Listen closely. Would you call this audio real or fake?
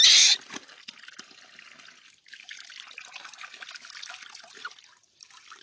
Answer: real